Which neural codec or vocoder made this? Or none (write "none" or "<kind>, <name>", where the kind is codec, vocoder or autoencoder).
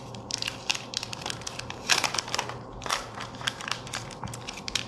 vocoder, BigVGAN v2